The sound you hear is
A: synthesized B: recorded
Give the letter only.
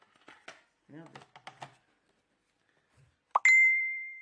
B